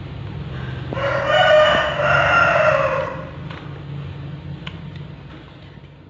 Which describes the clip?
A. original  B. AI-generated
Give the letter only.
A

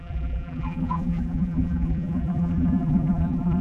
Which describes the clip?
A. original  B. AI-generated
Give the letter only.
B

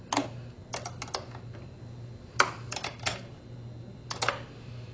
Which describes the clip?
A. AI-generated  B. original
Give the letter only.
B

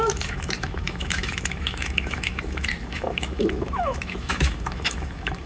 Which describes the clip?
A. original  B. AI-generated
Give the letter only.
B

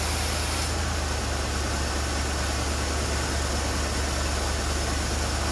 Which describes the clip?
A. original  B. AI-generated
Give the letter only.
A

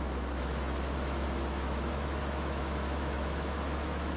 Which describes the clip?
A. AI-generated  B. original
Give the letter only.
A